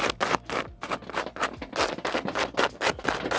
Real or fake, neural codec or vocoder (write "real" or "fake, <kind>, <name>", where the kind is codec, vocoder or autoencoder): real